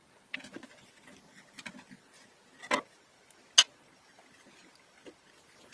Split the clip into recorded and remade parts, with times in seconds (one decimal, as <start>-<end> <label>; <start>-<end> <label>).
0.0-5.7 recorded